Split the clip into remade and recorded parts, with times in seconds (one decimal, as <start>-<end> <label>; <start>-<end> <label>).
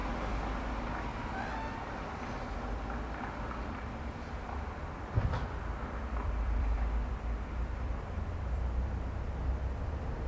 0.0-3.4 recorded; 3.4-10.3 remade